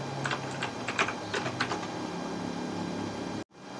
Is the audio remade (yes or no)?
no